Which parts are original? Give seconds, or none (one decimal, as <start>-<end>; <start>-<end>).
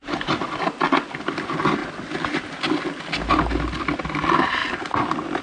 0.0-5.4